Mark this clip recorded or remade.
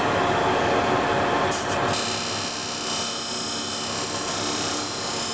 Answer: recorded